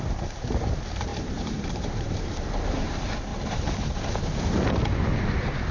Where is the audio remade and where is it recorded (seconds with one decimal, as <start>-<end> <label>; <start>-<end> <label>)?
0.0-1.1 recorded; 1.1-2.4 remade; 2.4-3.3 recorded; 3.3-4.1 remade; 4.1-5.7 recorded